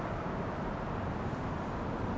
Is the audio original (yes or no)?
yes